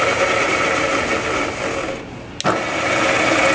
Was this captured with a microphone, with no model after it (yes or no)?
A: yes